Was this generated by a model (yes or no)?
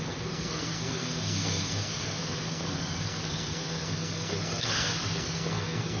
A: yes